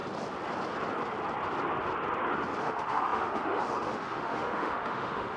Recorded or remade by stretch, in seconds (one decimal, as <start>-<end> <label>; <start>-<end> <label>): 0.0-2.6 recorded; 2.6-5.4 remade